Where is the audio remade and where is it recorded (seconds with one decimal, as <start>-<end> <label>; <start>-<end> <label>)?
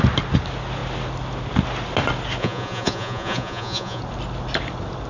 0.0-2.4 recorded; 2.4-4.0 remade; 4.0-5.1 recorded